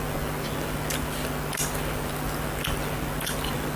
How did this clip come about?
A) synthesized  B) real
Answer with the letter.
B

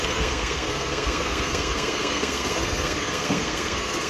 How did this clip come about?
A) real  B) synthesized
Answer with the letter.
B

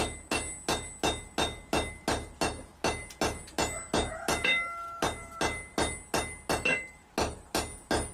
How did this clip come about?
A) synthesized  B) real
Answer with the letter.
B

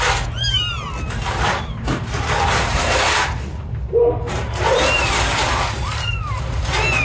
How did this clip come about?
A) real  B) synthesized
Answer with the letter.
A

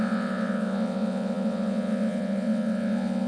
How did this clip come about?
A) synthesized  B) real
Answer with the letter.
A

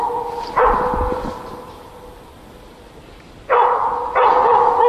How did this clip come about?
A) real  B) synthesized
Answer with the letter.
A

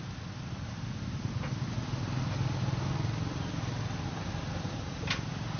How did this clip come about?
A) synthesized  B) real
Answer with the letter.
B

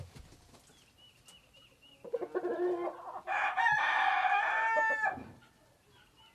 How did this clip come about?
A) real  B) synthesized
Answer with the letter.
A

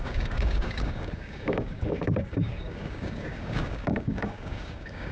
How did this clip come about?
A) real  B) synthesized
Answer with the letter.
B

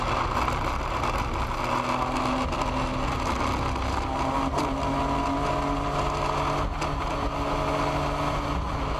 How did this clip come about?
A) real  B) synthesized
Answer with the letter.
A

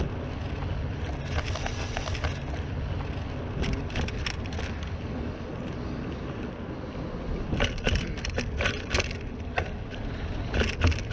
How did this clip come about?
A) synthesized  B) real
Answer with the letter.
B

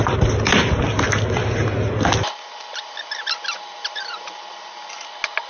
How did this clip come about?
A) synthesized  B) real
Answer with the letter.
B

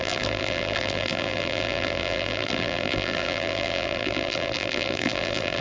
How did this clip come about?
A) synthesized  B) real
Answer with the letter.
A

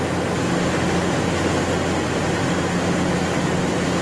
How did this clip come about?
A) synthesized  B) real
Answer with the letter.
B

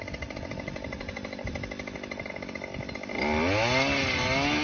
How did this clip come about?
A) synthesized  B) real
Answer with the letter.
B